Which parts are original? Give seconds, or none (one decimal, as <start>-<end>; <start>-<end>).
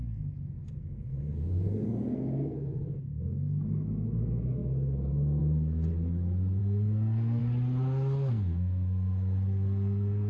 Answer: 5.9-6.6; 7.4-8.3